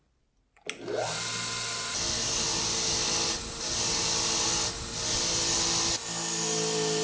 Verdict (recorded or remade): recorded